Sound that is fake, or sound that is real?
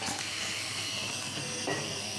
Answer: fake